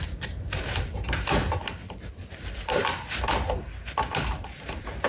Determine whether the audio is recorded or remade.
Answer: recorded